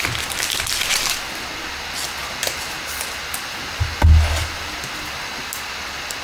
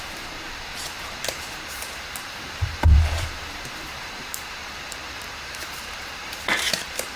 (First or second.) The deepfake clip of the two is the second